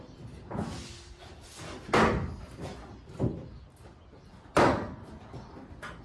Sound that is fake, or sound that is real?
fake